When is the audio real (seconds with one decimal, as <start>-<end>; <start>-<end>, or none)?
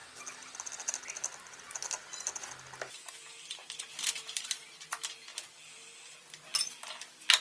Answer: 0.0-3.1; 5.3-7.4